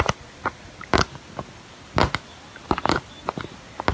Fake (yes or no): no